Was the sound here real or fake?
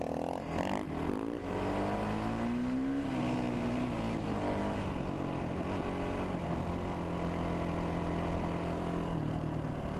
real